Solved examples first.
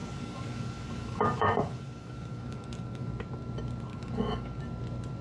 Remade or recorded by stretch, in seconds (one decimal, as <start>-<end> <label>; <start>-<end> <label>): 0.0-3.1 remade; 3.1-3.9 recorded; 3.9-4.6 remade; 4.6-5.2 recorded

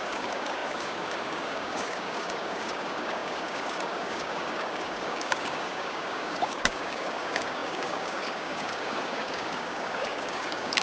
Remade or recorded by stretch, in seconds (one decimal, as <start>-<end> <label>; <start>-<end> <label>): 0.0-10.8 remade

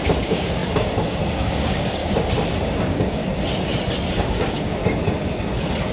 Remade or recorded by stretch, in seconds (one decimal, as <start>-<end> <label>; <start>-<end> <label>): 0.0-2.0 remade; 2.0-2.8 recorded; 2.8-3.2 remade; 3.2-4.1 recorded; 4.1-4.8 remade; 4.8-5.9 recorded

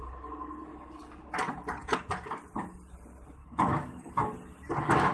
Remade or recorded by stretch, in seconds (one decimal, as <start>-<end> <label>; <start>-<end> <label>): 0.0-3.4 recorded; 3.4-4.1 remade; 4.1-5.1 recorded

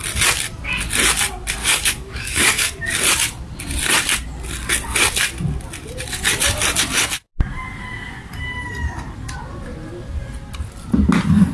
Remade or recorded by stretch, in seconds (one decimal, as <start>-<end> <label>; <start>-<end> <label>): 0.0-1.6 recorded; 1.6-2.8 remade; 2.8-11.5 recorded

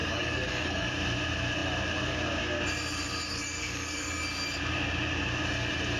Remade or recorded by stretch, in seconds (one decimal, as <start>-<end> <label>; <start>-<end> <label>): 0.0-0.9 remade; 0.9-3.3 recorded; 3.3-4.2 remade; 4.2-6.0 recorded